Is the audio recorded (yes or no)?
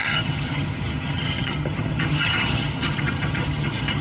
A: no